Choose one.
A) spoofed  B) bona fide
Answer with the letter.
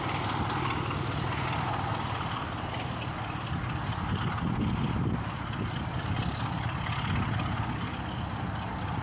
B